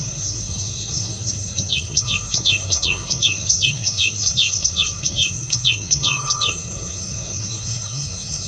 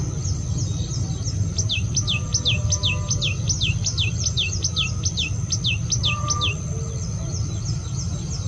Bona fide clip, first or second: second